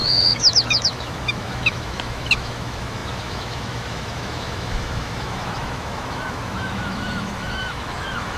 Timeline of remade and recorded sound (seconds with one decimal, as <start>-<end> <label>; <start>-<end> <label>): 0.0-8.4 remade